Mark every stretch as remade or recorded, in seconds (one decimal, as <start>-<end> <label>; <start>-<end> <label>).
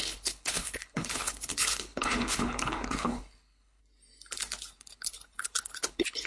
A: 0.0-3.8 remade; 3.8-4.7 recorded; 4.7-6.3 remade